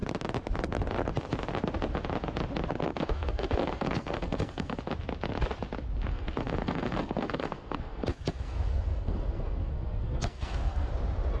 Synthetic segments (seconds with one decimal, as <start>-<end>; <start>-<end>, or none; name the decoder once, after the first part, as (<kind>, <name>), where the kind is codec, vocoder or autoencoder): 2.9-4.8 (codec, SNAC); 6.1-10.9